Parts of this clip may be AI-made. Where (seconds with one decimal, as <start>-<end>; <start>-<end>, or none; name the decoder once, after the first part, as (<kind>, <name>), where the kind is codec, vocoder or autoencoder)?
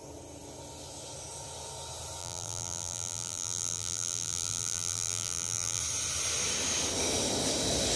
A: 2.2-5.8 (vocoder, BigVGAN v2)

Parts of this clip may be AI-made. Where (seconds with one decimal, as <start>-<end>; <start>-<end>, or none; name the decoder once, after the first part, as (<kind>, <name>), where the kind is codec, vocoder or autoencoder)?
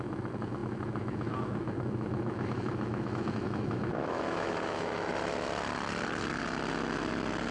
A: 0.0-5.1 (autoencoder, DAC-VAE)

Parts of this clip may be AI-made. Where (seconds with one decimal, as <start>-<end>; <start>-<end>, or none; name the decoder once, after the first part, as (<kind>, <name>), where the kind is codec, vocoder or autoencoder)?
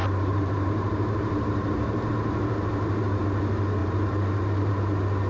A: 0.0-3.2 (vocoder, BigVGAN v2); 3.8-4.7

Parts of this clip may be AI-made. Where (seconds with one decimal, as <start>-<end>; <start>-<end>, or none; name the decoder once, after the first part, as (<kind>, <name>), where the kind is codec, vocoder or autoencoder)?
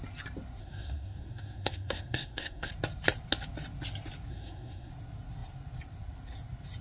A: 0.6-2.7 (codec, SNAC); 4.3-4.9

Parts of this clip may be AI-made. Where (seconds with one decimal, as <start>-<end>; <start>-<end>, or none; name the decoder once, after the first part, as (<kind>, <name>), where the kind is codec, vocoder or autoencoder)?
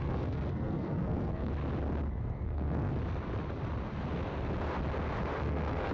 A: 0.0-1.5 (codec, SNAC); 2.2-2.9; 5.4-5.9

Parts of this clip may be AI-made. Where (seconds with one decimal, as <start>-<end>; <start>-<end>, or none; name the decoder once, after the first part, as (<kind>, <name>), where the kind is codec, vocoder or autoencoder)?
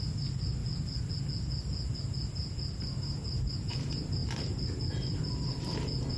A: 2.4-3.5 (vocoder, BigVGAN v2); 4.2-5.5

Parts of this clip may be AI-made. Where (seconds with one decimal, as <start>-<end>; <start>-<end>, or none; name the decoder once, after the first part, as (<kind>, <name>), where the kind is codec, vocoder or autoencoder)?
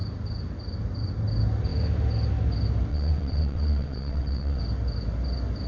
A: 2.9-4.6 (vocoder, WaveNeXt)